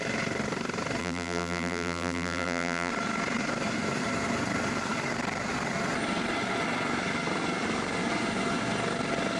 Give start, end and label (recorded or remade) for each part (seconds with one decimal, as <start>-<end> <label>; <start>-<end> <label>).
0.0-1.0 recorded; 1.0-2.9 remade; 2.9-9.4 recorded